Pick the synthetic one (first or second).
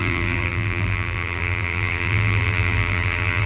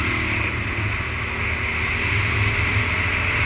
first